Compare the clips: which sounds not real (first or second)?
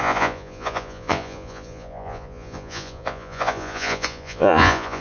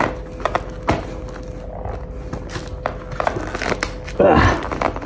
first